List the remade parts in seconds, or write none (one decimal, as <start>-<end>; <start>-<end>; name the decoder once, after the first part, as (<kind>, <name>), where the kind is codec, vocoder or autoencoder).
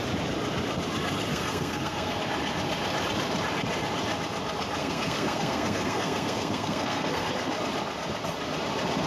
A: 1.3-2.2 (codec, SNAC); 4.8-7.3